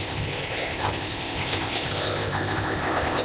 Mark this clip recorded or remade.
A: remade